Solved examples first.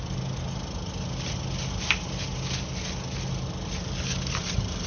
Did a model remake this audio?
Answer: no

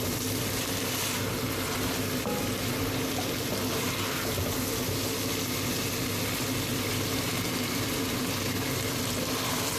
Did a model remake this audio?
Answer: no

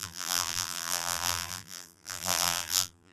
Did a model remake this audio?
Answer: yes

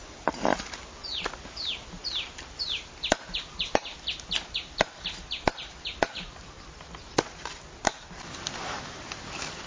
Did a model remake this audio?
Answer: no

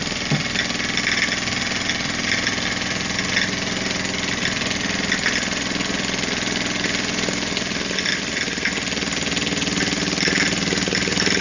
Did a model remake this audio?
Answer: no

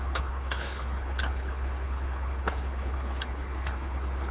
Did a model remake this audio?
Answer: yes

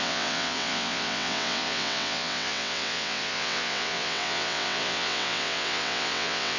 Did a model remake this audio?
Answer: yes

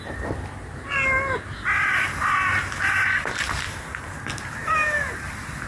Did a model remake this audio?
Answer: no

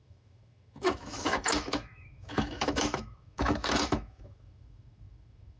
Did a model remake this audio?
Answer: yes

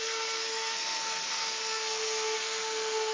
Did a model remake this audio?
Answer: yes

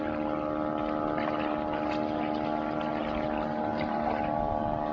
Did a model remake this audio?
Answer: no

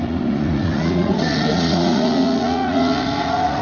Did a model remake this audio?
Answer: yes